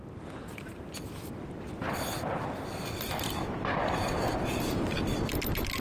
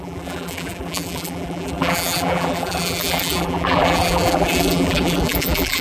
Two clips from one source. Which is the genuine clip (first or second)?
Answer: first